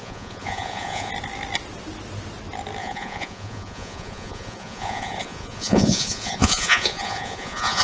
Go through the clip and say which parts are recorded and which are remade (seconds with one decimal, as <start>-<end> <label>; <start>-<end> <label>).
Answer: 0.0-1.1 remade; 1.1-2.8 recorded; 2.8-7.8 remade